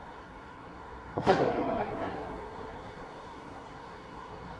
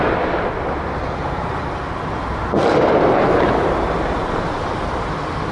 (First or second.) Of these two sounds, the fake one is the first